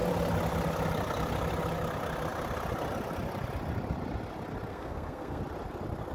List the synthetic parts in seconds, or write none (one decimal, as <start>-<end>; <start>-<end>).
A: 4.7-5.4